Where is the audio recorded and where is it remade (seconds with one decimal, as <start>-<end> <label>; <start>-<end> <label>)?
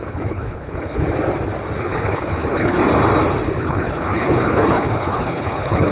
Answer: 0.0-1.0 remade; 1.0-1.8 recorded; 1.8-2.8 remade; 2.8-3.6 recorded; 3.6-5.9 remade